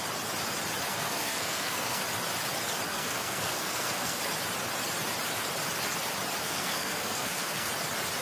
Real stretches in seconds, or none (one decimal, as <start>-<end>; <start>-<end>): 0.0-0.9; 2.0-2.9; 4.2-6.4; 7.7-8.2